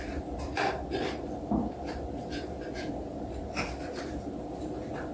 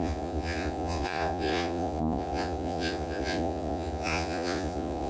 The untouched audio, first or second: first